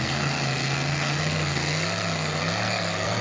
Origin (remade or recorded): remade